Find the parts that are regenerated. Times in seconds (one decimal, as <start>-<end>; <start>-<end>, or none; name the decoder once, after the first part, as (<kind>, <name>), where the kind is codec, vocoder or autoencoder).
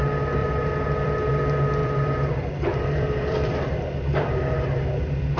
0.4-1.3 (vocoder, BigVGAN v2); 1.8-4.4